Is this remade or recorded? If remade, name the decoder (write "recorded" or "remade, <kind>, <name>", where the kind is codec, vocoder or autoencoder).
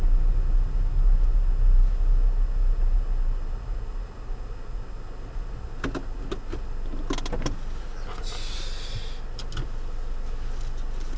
recorded